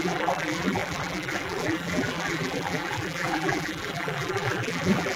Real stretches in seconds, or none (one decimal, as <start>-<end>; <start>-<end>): none